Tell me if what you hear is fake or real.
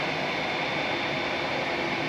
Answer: real